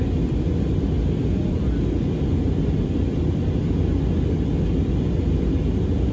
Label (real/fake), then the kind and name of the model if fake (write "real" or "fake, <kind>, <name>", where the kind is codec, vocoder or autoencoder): real